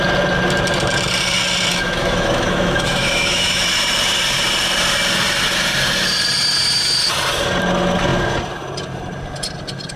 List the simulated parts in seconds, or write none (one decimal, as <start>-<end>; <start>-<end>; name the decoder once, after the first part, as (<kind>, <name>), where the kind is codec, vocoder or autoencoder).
1.7-3.6 (autoencoder, DAC-VAE)